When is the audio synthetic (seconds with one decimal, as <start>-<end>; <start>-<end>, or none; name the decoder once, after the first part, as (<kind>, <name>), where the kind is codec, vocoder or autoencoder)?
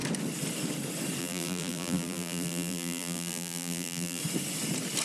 1.2-4.2 (vocoder, BigVGAN v2)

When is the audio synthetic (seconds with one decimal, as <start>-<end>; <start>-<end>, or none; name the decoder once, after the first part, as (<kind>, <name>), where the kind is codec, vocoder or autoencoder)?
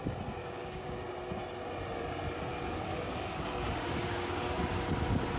0.4-1.0 (codec, DAC); 2.5-4.6